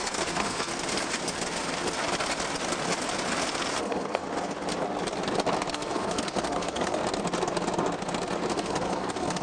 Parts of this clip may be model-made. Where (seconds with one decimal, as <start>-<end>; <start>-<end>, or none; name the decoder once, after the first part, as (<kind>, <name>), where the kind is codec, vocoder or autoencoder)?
0.0-0.7 (codec, SNAC); 3.8-4.2; 5.7-7.0; 8.5-9.4